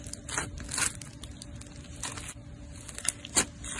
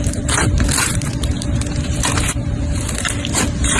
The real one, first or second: first